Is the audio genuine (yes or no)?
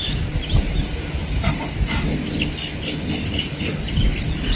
yes